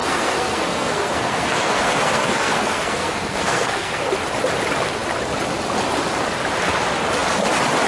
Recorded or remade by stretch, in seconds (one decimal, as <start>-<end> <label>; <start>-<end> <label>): 0.0-4.1 remade; 4.1-7.9 recorded